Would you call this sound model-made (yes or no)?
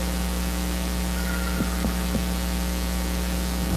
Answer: yes